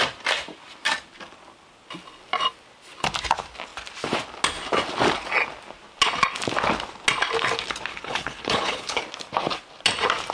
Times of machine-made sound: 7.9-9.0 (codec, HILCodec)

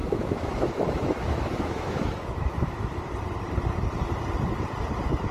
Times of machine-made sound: 0.0-3.1 (autoencoder, DAC-VAE)

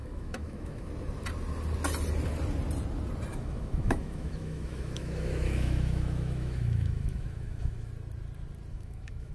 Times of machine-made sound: 0.0-0.9 (autoencoder, DAC-VAE); 3.3-7.9; 8.7-9.3

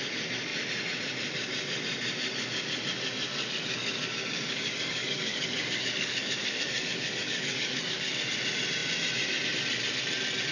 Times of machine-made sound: 3.3-8.3 (codec, DAC)